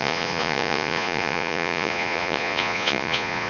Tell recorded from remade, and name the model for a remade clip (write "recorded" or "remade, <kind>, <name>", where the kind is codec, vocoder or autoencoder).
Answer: remade, vocoder, Vocos